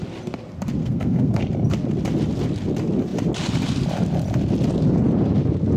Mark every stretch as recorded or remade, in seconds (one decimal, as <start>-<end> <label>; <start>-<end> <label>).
0.0-0.8 recorded; 0.8-1.4 remade; 1.4-5.8 recorded